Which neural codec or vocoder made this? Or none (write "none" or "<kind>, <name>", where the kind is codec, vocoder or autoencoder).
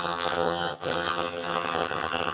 vocoder, HiFi-GAN